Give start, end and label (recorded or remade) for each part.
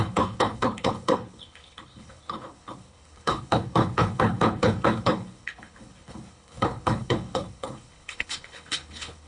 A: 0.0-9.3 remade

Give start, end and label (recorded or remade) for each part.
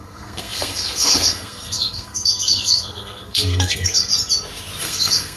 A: 0.0-4.1 remade; 4.1-4.8 recorded; 4.8-5.4 remade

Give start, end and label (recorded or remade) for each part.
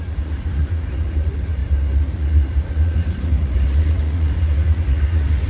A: 0.0-5.5 remade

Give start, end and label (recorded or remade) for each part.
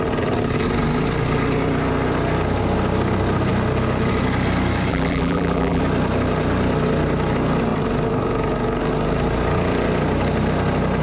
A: 0.0-4.9 recorded; 4.9-5.8 remade; 5.8-11.0 recorded